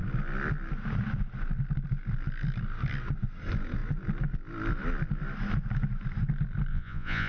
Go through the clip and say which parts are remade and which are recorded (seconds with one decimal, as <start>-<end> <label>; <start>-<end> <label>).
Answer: 0.0-6.7 recorded; 6.7-7.3 remade